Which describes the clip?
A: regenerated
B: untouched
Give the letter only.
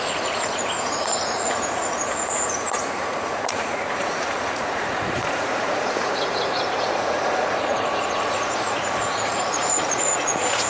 A